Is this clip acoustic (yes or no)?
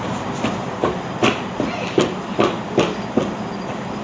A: yes